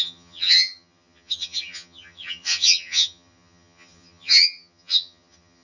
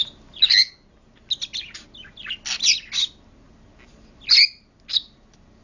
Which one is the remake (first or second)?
first